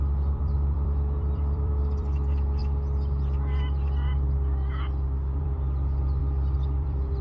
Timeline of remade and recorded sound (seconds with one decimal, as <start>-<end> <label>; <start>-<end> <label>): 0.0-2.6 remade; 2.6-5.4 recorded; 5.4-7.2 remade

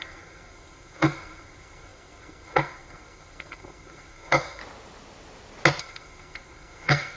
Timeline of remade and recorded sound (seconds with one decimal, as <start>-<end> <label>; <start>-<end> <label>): 0.0-4.6 remade; 4.6-5.8 recorded; 5.8-7.2 remade

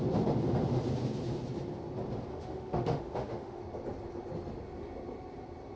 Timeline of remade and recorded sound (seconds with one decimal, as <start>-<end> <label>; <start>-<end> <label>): 0.0-2.3 recorded; 2.3-3.6 remade; 3.6-5.8 recorded